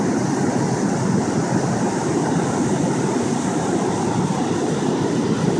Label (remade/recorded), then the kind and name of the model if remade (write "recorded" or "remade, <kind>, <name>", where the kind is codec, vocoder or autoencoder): recorded